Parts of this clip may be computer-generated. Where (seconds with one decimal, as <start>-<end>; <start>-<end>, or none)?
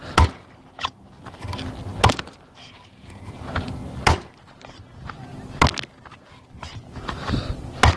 none